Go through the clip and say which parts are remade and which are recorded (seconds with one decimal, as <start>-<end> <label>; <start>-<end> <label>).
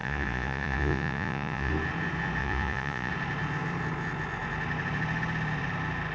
0.0-1.7 remade; 1.7-2.4 recorded; 2.4-3.1 remade; 3.1-6.1 recorded